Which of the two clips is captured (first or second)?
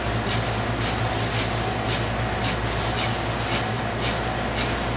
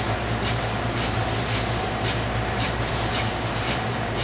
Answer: first